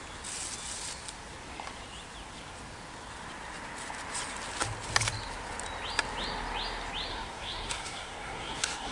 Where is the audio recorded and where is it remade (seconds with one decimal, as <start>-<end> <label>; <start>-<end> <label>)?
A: 0.0-7.1 recorded; 7.1-8.9 remade